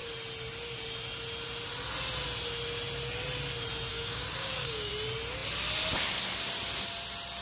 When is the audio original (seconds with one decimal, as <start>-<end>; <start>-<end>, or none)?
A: 0.0-3.9; 4.9-7.4